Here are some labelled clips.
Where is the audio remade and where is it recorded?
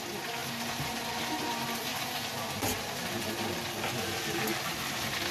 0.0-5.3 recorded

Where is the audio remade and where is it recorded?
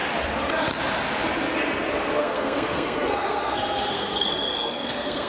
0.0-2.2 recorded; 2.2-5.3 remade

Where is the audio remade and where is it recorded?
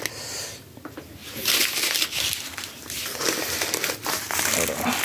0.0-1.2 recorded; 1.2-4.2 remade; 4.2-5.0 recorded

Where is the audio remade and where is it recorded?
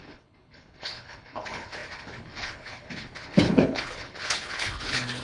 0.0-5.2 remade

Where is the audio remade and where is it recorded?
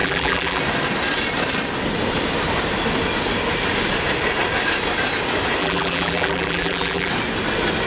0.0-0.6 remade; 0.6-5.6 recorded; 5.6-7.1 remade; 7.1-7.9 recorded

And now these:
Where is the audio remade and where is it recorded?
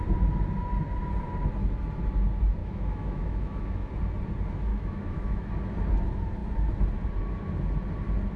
0.0-2.6 recorded; 2.6-3.9 remade; 3.9-4.7 recorded; 4.7-5.5 remade; 5.5-8.4 recorded